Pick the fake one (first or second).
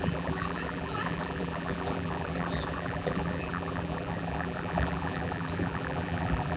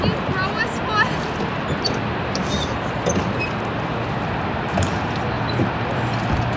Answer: first